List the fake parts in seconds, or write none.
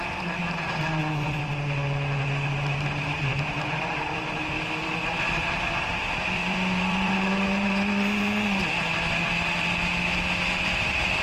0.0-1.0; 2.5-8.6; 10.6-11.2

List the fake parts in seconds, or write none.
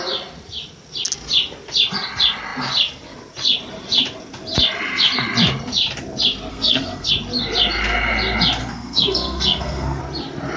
6.5-7.1; 8.6-10.0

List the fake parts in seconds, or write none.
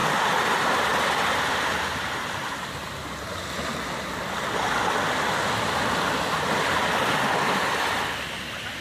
none